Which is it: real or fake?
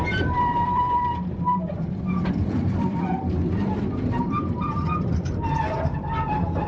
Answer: fake